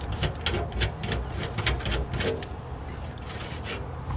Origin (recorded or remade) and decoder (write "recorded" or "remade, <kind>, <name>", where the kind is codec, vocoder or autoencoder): recorded